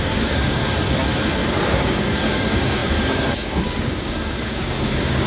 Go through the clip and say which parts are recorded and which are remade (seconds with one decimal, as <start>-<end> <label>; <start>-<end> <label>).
0.0-0.6 remade; 0.6-1.6 recorded; 1.6-5.3 remade